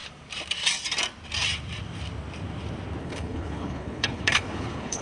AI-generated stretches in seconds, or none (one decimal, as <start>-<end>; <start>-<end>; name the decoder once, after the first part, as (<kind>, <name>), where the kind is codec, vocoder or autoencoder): 3.0-5.0 (codec, HILCodec)